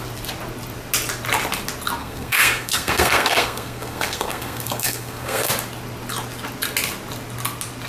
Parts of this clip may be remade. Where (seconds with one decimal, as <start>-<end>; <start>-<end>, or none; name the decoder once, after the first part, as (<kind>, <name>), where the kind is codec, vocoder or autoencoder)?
2.0-5.5 (codec, SNAC)